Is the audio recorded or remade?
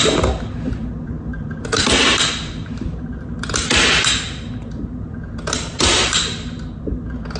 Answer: recorded